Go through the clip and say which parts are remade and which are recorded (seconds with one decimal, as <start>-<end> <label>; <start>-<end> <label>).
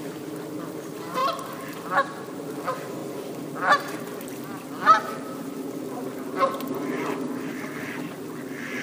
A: 0.0-8.8 recorded